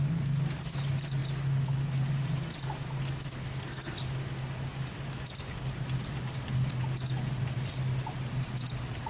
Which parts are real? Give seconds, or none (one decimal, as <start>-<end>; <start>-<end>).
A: 0.0-9.1